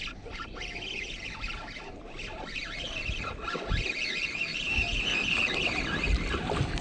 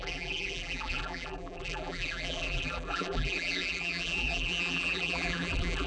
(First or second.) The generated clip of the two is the second